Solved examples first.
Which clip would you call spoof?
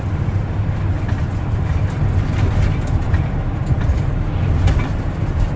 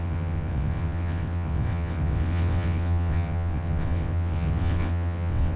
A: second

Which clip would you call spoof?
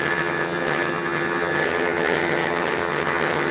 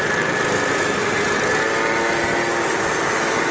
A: first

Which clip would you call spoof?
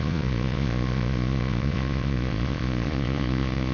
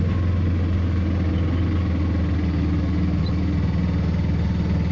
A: first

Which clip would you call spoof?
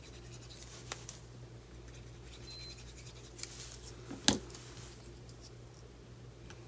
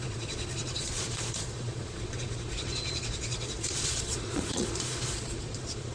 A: second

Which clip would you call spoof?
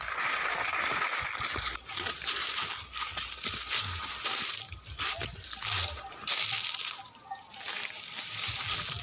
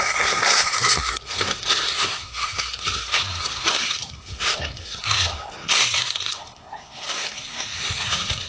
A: second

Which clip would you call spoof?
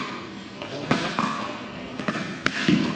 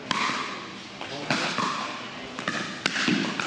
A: first